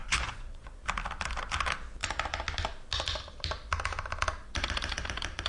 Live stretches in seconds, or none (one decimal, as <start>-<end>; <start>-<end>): 0.8-5.5